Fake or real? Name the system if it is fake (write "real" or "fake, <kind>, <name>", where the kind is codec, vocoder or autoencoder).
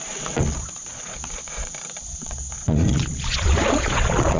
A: fake, vocoder, Vocos